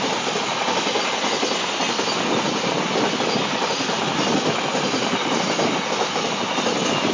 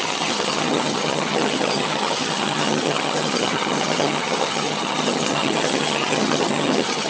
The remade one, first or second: second